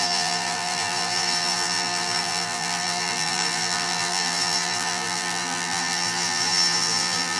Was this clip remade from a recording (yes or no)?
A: yes